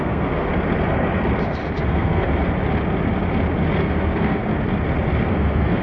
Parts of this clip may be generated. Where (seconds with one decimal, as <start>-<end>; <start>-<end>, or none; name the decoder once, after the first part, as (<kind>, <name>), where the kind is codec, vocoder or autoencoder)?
0.0-0.5 (codec, SNAC); 1.8-2.3; 3.8-4.4; 5.2-5.8